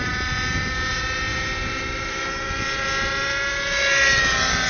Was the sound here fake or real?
real